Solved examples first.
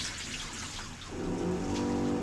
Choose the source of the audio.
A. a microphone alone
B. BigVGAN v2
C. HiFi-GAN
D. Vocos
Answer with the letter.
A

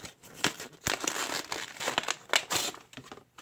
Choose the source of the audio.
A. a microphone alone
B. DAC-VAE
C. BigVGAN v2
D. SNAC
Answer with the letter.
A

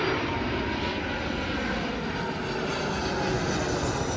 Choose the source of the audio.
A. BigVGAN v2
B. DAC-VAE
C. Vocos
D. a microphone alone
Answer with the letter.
D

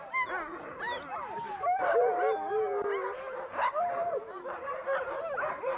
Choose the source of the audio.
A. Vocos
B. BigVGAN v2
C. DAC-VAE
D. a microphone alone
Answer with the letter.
D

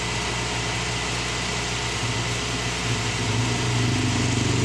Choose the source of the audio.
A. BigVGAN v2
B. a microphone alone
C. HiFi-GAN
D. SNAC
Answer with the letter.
B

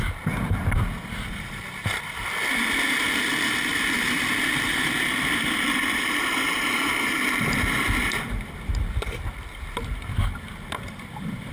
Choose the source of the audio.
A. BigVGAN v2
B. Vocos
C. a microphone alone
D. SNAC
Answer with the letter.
A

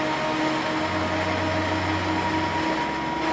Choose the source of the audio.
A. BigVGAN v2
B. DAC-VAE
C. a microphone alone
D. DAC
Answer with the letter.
C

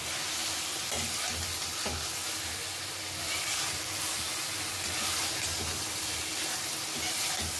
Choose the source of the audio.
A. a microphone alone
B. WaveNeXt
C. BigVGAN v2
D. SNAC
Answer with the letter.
A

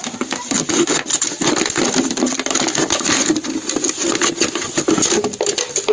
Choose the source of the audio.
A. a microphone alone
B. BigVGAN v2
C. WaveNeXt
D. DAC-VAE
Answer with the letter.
A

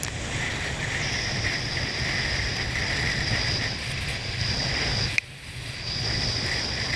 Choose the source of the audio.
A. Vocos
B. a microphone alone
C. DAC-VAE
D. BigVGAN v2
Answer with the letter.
D